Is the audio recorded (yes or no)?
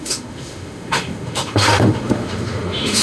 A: no